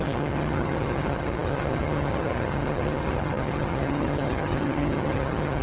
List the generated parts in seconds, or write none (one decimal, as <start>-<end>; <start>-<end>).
0.0-5.6